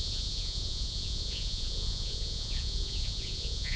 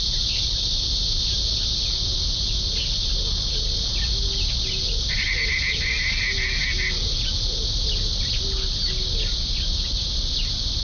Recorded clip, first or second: second